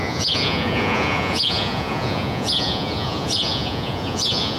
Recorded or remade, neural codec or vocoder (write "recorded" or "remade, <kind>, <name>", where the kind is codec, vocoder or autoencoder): remade, vocoder, Vocos